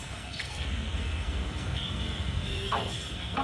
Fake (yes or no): yes